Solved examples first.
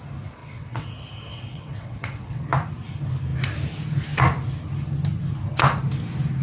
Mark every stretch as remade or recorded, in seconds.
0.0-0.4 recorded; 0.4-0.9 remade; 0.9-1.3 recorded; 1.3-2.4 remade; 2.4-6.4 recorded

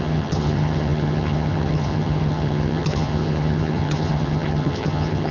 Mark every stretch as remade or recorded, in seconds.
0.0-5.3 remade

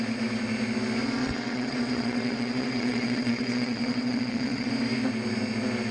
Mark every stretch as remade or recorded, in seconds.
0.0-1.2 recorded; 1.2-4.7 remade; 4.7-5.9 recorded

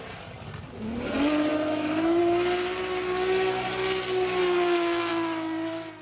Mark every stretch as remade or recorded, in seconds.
0.0-1.5 recorded; 1.5-2.2 remade; 2.2-6.0 recorded